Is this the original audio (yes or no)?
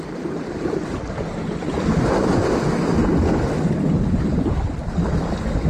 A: yes